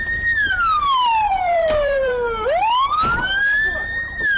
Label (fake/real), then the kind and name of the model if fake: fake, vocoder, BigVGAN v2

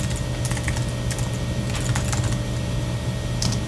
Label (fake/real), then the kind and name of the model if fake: real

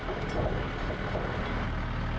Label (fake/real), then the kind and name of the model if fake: real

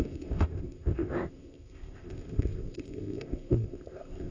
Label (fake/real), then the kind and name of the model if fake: fake, codec, ZipCodec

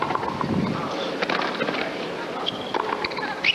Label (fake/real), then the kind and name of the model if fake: real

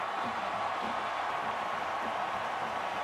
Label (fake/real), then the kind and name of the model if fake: fake, vocoder, BigVGAN v2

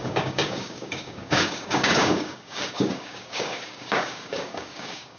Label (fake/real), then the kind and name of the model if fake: fake, codec, DAC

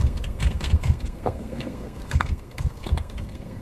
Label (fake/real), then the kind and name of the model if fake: fake, codec, SNAC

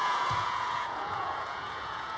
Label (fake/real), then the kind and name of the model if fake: fake, vocoder, Vocos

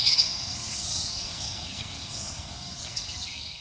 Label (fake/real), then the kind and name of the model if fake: fake, codec, SNAC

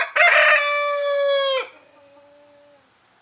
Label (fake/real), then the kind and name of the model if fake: real